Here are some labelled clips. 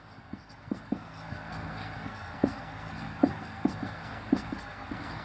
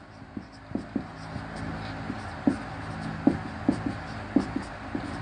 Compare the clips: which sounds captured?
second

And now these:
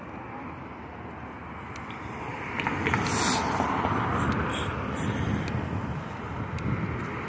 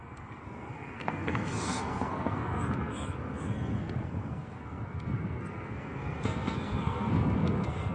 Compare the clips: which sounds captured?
first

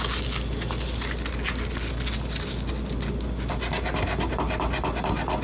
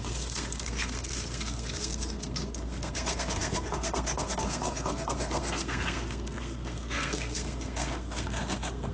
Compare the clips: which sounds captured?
first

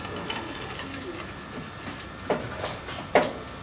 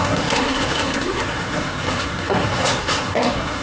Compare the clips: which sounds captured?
first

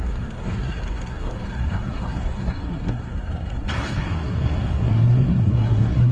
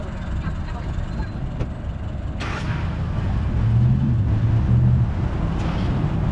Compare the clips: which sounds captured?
second